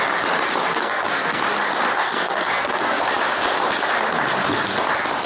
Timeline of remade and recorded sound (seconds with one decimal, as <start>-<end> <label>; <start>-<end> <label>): 0.0-0.7 recorded; 0.7-1.4 remade; 1.4-2.0 recorded; 2.0-3.0 remade; 3.0-5.3 recorded